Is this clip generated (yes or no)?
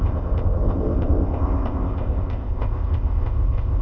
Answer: yes